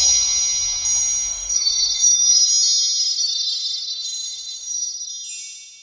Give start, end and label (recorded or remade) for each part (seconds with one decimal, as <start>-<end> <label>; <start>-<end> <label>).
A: 0.0-1.3 recorded; 1.3-2.5 remade; 2.5-3.0 recorded; 3.0-5.1 remade; 5.1-5.8 recorded

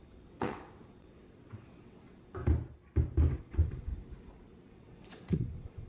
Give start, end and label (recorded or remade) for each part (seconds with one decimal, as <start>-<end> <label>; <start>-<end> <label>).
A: 0.0-2.4 remade; 2.4-3.4 recorded; 3.4-3.9 remade; 3.9-4.7 recorded; 4.7-5.9 remade

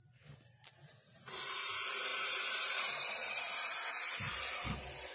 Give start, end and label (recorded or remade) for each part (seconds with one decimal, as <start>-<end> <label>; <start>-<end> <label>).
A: 0.0-2.1 recorded; 2.1-3.4 remade; 3.4-5.1 recorded

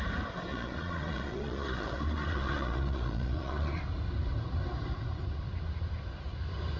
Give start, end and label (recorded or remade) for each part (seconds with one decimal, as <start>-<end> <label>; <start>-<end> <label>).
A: 0.0-0.5 recorded; 0.5-3.8 remade; 3.8-6.8 recorded